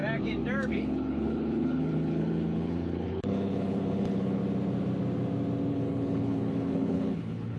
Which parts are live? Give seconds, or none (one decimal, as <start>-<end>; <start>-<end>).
0.0-0.7; 4.4-5.7